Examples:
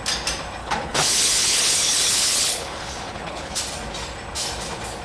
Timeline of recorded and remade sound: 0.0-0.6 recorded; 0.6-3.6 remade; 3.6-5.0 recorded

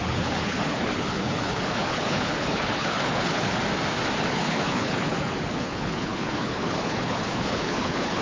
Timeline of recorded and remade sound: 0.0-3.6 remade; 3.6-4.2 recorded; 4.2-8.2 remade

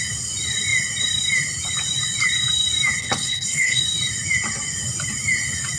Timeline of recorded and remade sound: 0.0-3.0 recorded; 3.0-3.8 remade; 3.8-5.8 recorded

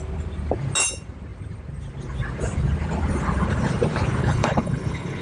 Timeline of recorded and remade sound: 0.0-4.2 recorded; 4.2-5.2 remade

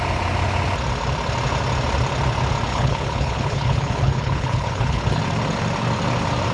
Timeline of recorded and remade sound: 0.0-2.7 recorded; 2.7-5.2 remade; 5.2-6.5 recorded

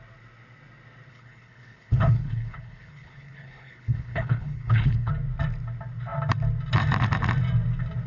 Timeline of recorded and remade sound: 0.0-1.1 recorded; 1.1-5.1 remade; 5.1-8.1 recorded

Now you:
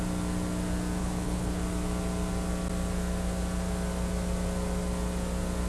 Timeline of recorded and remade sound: 0.0-1.0 recorded; 1.0-1.6 remade; 1.6-5.7 recorded

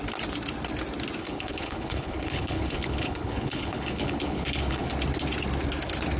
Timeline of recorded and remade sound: 0.0-1.2 recorded; 1.2-4.9 remade; 4.9-6.2 recorded